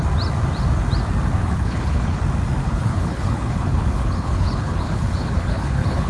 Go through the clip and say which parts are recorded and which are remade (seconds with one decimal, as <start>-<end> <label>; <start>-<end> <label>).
0.0-1.4 recorded; 1.4-2.2 remade; 2.2-2.6 recorded; 2.6-6.1 remade